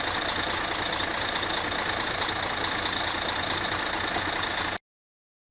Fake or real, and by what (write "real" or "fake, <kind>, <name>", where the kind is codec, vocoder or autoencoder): real